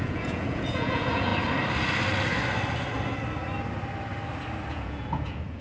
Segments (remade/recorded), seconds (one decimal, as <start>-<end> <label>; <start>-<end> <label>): 0.0-1.3 remade; 1.3-4.7 recorded; 4.7-5.6 remade